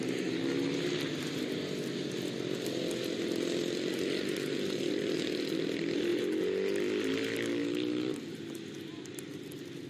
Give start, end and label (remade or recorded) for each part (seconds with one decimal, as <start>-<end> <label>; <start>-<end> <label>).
0.0-9.9 recorded